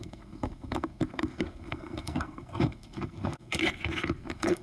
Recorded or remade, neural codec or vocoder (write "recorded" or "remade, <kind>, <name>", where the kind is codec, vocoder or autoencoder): remade, codec, SNAC